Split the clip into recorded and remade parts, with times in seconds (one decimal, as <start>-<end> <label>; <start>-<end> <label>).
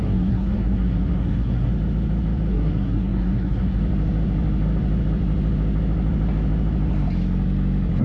0.0-1.7 remade; 1.7-2.5 recorded; 2.5-3.8 remade; 3.8-8.0 recorded